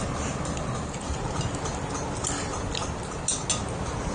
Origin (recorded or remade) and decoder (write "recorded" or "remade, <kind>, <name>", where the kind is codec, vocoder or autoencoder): recorded